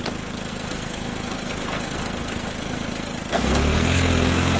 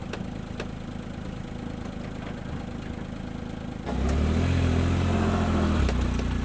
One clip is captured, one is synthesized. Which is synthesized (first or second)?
first